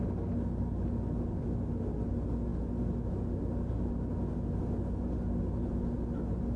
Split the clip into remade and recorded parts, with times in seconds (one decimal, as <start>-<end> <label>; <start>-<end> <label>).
0.0-6.6 recorded